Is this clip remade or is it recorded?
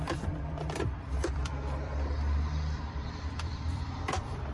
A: remade